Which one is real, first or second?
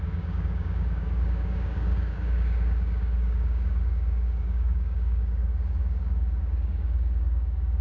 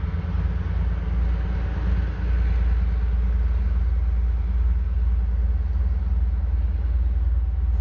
second